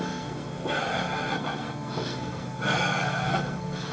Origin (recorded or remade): remade